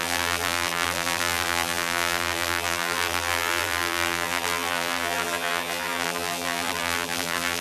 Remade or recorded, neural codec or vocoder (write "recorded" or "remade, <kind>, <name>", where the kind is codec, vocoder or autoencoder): remade, vocoder, BigVGAN v2